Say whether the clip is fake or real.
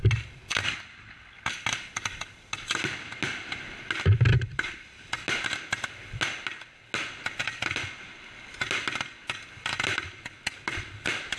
real